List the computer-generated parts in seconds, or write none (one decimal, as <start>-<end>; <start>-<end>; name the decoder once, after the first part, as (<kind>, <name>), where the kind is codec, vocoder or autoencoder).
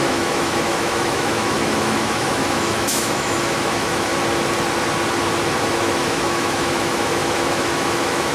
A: 0.0-4.1 (autoencoder, DAC-VAE); 5.7-8.3